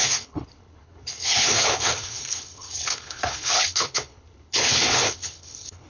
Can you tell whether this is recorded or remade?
remade